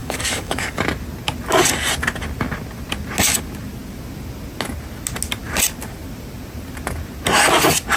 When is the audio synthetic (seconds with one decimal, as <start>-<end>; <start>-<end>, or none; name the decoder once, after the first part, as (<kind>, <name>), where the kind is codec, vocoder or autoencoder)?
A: 0.0-0.8 (codec, DAC)